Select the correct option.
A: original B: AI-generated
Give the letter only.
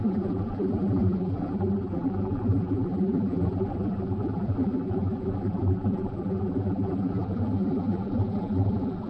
B